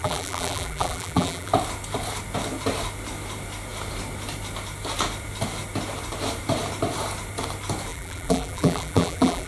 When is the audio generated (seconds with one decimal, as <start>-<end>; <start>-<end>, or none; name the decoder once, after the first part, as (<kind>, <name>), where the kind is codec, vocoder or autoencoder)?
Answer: 0.0-1.5 (vocoder, BigVGAN v2); 7.9-9.5